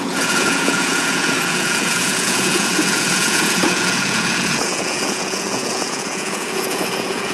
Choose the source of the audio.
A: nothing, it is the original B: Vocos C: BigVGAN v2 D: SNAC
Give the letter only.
B